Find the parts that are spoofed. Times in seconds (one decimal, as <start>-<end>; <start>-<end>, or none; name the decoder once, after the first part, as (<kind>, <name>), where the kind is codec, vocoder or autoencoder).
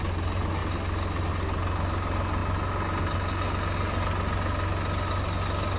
none